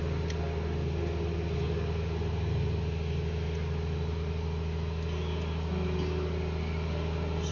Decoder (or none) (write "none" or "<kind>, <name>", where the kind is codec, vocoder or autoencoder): none